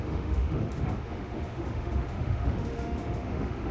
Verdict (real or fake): fake